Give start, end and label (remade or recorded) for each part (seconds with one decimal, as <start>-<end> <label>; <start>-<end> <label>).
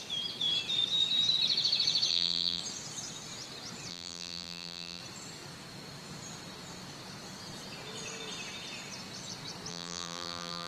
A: 0.0-2.1 recorded; 2.1-2.6 remade; 2.6-3.9 recorded; 3.9-5.0 remade; 5.0-9.7 recorded; 9.7-10.7 remade